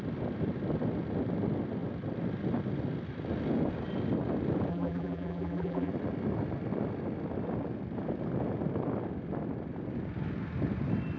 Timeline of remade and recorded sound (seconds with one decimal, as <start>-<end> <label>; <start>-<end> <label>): 0.0-4.7 recorded; 4.7-5.9 remade; 5.9-11.2 recorded